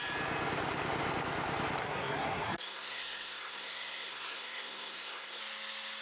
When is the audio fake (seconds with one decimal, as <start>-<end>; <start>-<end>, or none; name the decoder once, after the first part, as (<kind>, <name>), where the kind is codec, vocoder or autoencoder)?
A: 1.8-5.4 (codec, SNAC)